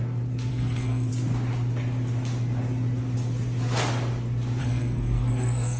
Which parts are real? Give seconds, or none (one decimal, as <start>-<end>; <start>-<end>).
0.0-0.5; 1.1-4.6